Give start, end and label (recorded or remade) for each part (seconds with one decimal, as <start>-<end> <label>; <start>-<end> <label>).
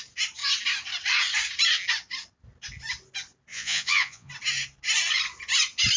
0.0-3.5 recorded; 3.5-4.3 remade; 4.3-6.0 recorded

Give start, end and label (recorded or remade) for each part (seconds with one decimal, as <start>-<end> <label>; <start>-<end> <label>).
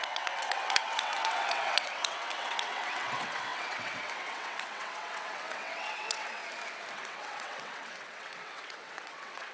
0.0-6.4 remade; 6.4-6.9 recorded; 6.9-9.5 remade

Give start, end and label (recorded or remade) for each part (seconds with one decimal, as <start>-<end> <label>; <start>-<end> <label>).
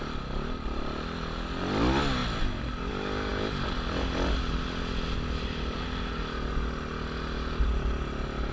0.0-8.5 recorded